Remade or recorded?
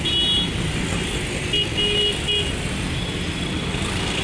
recorded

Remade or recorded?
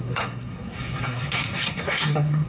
remade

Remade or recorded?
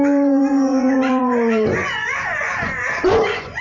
remade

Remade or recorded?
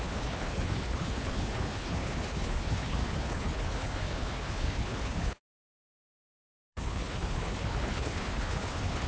remade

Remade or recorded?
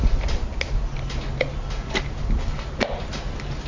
recorded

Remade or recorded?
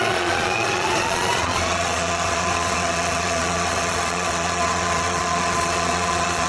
remade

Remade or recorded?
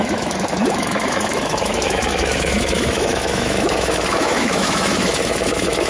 remade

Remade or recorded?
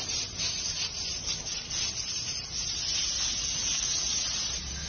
recorded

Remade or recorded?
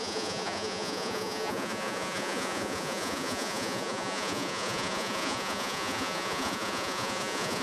remade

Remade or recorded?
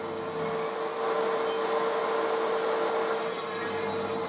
recorded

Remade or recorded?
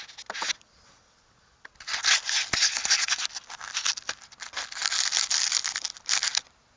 recorded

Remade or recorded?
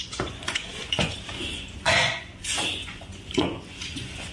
remade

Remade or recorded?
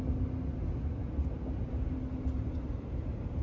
recorded